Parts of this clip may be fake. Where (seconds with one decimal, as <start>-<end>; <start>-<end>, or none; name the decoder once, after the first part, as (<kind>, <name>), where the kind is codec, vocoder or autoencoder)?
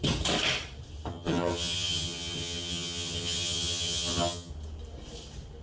1.1-4.5 (vocoder, HiFi-GAN)